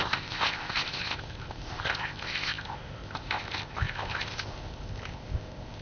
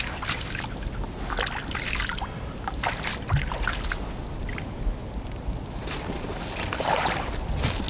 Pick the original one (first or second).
second